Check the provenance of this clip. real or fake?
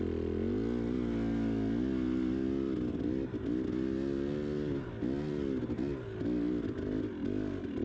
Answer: real